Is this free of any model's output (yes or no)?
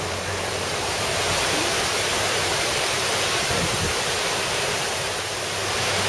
no